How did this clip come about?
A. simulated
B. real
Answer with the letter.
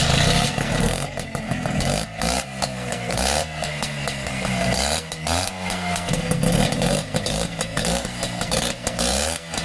A